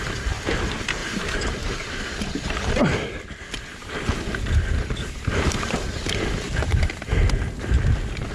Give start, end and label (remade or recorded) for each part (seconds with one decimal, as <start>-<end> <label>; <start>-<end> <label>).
0.0-1.0 recorded; 1.0-2.8 remade; 2.8-3.7 recorded; 3.7-6.9 remade; 6.9-8.3 recorded